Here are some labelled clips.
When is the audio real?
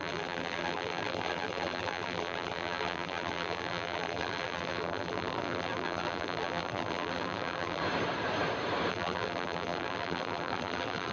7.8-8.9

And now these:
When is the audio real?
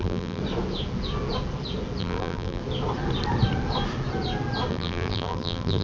0.4-2.0; 2.6-4.7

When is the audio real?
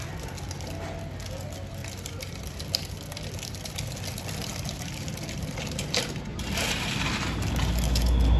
0.0-1.8; 5.0-6.3; 7.3-8.4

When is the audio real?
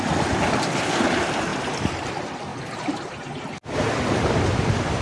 0.0-1.5; 2.1-5.0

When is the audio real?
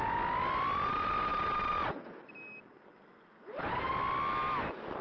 0.0-5.0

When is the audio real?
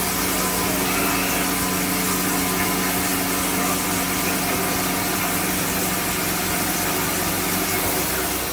0.0-8.5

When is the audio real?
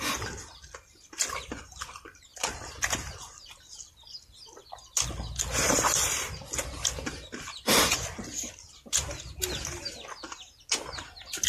0.0-11.5